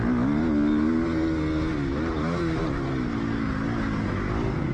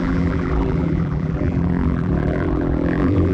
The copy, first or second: second